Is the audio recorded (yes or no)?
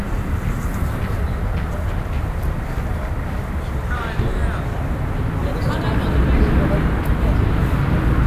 yes